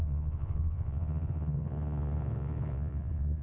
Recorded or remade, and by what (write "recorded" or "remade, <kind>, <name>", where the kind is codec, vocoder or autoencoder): remade, vocoder, Vocos